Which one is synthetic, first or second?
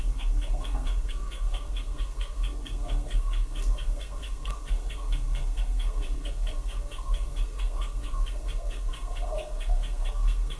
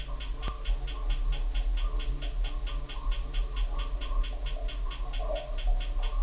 first